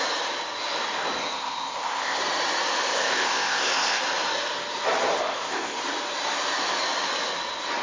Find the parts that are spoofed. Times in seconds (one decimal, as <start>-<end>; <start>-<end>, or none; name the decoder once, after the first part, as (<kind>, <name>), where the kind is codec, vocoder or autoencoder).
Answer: 1.2-2.2 (codec, ZipCodec); 2.8-4.0; 5.2-5.8